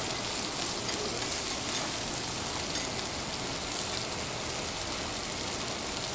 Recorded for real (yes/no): yes